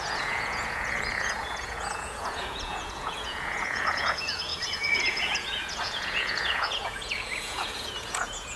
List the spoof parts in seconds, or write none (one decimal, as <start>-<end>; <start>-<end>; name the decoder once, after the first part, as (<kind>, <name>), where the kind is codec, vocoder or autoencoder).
0.0-8.6 (vocoder, Vocos)